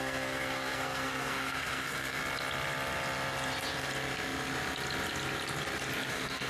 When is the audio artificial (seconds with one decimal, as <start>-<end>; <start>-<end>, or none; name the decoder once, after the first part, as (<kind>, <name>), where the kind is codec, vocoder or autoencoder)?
0.0-2.2 (codec, SNAC); 6.1-6.5

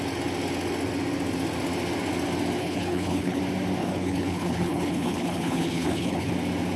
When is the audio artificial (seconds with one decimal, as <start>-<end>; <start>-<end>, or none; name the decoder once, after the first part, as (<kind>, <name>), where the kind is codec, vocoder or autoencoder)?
2.6-3.4 (codec, HILCodec); 3.8-6.3

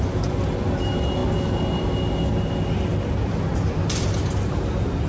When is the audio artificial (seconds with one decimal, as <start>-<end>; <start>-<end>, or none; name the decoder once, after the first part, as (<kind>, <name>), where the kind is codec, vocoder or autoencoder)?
none

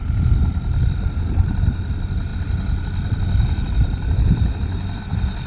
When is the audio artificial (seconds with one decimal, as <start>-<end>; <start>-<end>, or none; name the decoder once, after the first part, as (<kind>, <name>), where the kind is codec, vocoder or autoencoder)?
none

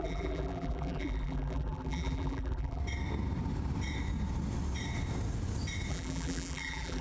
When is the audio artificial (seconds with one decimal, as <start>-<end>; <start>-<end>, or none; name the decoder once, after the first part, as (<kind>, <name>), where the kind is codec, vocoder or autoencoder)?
0.0-2.8 (vocoder, BigVGAN v2); 5.9-7.0

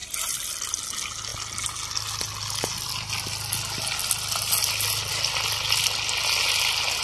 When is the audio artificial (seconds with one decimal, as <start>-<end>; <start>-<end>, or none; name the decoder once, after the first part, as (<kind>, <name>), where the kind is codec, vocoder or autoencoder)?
0.0-0.5 (vocoder, BigVGAN v2)